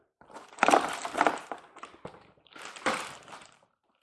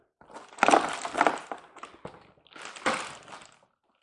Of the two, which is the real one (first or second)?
second